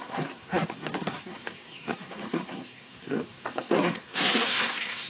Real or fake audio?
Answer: fake